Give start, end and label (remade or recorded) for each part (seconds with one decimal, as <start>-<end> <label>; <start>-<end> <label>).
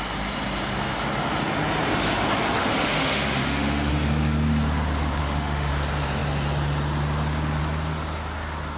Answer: 0.0-2.6 recorded; 2.6-3.9 remade; 3.9-5.2 recorded; 5.2-5.7 remade; 5.7-8.8 recorded